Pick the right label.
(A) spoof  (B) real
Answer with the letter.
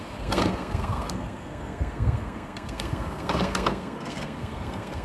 A